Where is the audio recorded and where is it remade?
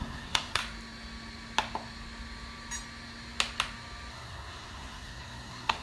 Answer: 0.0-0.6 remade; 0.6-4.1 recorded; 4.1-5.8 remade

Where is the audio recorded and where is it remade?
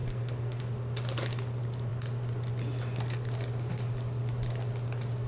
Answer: 0.0-0.6 remade; 0.6-5.3 recorded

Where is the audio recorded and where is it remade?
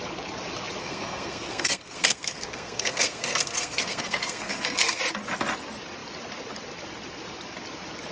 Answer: 0.0-0.8 recorded; 0.8-5.0 remade; 5.0-8.1 recorded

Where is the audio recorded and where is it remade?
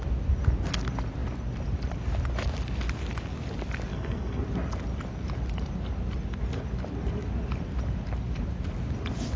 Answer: 0.0-3.9 recorded; 3.9-4.4 remade; 4.4-9.4 recorded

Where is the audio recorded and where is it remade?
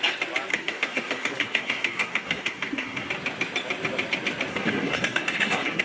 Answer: 0.0-0.5 recorded; 0.5-3.1 remade; 3.1-4.5 recorded; 4.5-5.8 remade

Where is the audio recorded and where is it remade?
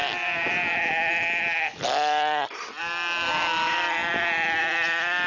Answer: 0.0-5.3 recorded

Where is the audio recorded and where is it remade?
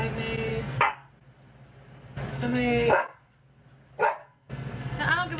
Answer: 0.0-0.5 recorded; 0.5-1.1 remade; 1.1-2.3 recorded; 2.3-3.6 remade; 3.6-4.2 recorded; 4.2-5.0 remade; 5.0-5.4 recorded